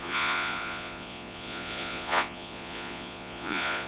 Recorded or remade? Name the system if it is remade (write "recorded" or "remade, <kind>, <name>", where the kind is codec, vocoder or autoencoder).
remade, vocoder, Vocos